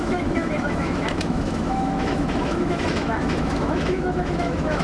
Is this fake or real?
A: fake